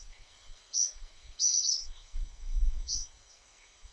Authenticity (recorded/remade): remade